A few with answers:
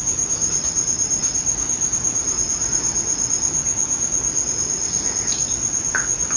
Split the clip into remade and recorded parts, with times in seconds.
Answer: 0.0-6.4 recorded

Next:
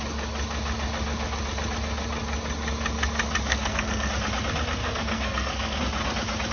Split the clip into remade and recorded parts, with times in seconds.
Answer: 0.0-3.5 recorded; 3.5-4.1 remade; 4.1-4.8 recorded; 4.8-5.8 remade; 5.8-6.5 recorded

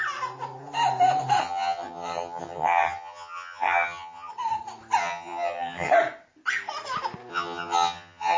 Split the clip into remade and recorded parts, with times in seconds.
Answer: 0.0-1.4 recorded; 1.4-4.3 remade; 4.3-5.0 recorded; 5.0-5.9 remade; 5.9-7.3 recorded; 7.3-8.4 remade

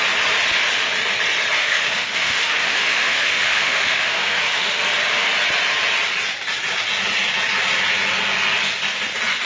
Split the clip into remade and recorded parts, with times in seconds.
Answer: 0.0-1.6 recorded; 1.6-4.8 remade; 4.8-9.5 recorded

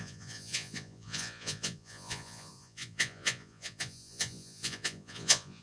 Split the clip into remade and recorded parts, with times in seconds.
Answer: 0.0-5.6 remade

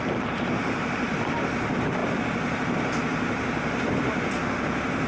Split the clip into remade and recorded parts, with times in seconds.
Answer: 0.0-5.1 recorded

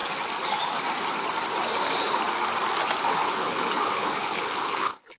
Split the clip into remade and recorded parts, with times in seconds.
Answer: 0.0-3.1 recorded; 3.1-5.2 remade

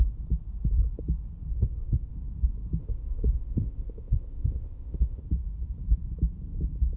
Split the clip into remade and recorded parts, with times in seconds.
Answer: 0.0-1.5 recorded; 1.5-2.1 remade; 2.1-2.8 recorded; 2.8-5.2 remade; 5.2-7.0 recorded